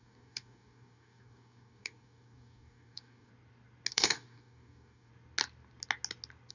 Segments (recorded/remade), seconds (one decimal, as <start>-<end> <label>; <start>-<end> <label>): 0.0-3.3 remade; 3.3-3.9 recorded; 3.9-5.1 remade; 5.1-6.5 recorded